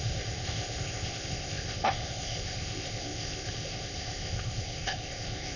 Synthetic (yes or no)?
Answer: yes